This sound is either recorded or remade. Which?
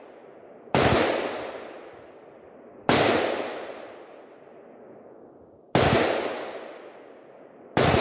recorded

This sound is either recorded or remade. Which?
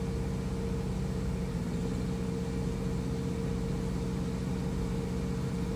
recorded